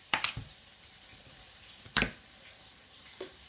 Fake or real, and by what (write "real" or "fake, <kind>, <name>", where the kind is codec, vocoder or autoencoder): fake, vocoder, BigVGAN v2